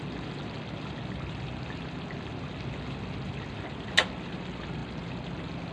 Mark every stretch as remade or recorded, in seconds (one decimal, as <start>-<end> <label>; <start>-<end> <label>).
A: 0.0-5.7 recorded